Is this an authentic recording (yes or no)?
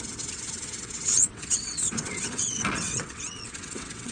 no